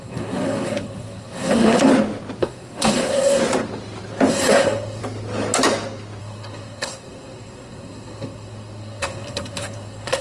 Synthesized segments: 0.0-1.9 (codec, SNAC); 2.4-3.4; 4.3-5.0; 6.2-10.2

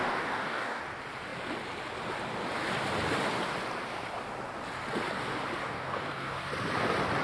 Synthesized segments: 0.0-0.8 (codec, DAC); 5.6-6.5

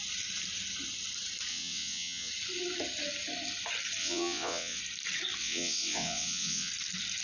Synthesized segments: 1.5-2.3 (vocoder, WaveNeXt); 4.0-4.8; 5.4-6.7

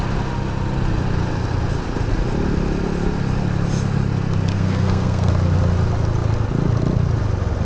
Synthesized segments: 4.5-5.3 (codec, SNAC)

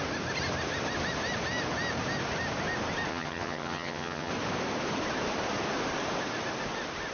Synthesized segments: 3.1-4.3 (vocoder, HiFi-GAN)

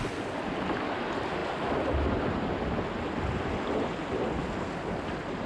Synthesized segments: none